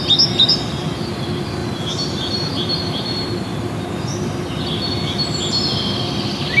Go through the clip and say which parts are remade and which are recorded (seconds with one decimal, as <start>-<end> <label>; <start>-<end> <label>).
0.0-6.6 recorded